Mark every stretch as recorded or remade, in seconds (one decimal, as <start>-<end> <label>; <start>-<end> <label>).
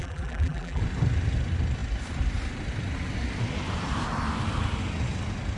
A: 0.0-0.8 remade; 0.8-5.6 recorded